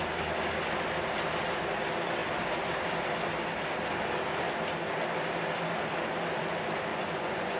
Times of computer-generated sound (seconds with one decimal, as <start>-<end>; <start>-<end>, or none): 6.9-7.6